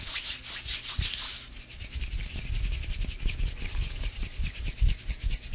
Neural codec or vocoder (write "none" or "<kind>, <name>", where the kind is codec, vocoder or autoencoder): none